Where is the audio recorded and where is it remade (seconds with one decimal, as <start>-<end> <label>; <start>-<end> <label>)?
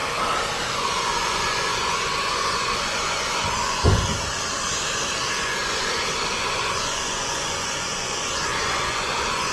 0.0-0.7 recorded; 0.7-4.1 remade; 4.1-5.4 recorded; 5.4-9.5 remade